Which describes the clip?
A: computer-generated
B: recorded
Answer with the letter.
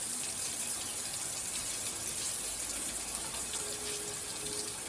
B